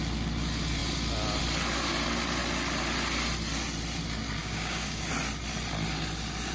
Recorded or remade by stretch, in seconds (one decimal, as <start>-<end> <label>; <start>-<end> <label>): 0.0-4.4 recorded; 4.4-5.1 remade; 5.1-6.5 recorded